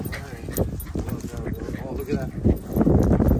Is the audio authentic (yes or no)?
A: yes